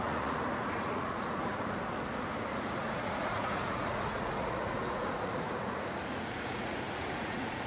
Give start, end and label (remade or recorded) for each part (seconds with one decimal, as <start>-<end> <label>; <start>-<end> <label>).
0.0-1.5 remade; 1.5-2.5 recorded; 2.5-7.7 remade